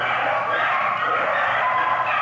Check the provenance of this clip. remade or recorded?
recorded